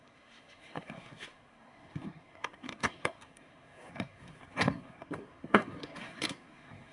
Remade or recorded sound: remade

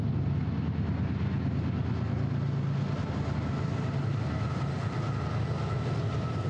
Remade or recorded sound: recorded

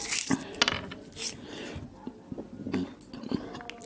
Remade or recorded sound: recorded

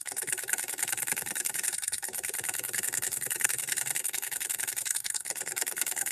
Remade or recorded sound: remade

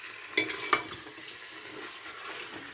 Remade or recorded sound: recorded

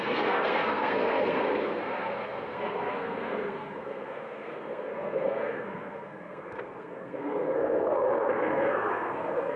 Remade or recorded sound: remade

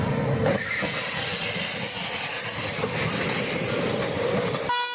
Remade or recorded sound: recorded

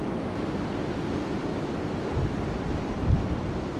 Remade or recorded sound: recorded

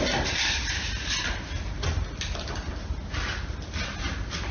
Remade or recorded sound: recorded